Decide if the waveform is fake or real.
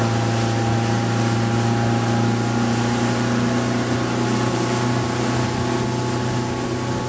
real